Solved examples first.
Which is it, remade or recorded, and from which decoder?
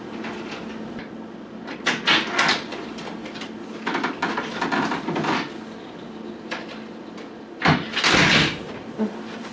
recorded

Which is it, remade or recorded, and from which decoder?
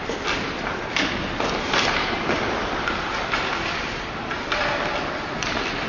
recorded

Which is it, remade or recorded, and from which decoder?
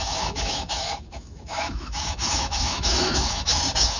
remade, autoencoder, DAC-VAE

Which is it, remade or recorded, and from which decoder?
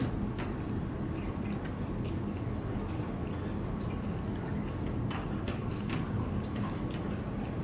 recorded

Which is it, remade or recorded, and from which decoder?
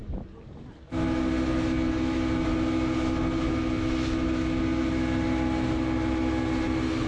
recorded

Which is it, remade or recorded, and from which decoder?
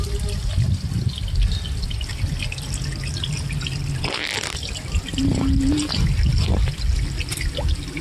recorded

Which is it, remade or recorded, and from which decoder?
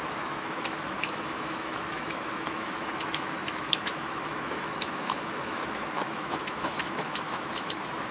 remade, autoencoder, DAC-VAE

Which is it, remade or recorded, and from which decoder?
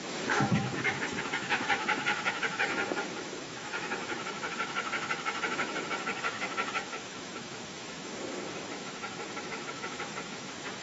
remade, autoencoder, DAC-VAE